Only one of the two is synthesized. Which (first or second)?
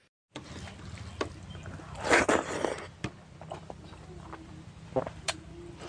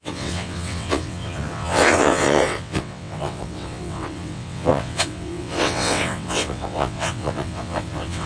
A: second